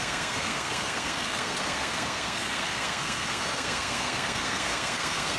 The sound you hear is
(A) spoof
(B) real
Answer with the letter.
A